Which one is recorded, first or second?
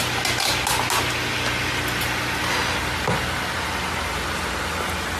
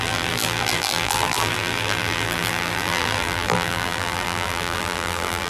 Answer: first